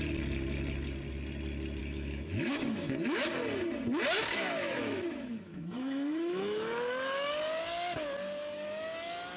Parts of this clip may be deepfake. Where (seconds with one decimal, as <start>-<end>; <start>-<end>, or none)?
1.8-3.3; 4.2-7.3